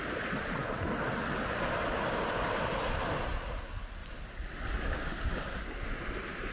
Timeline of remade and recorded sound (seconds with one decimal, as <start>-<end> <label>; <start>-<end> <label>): 0.0-6.5 recorded